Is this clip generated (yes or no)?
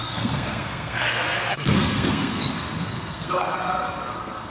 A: yes